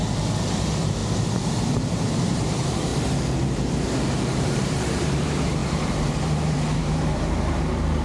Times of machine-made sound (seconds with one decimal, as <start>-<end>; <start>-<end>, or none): 0.0-2.9; 3.4-8.0